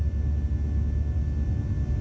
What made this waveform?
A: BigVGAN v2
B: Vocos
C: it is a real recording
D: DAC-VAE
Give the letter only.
C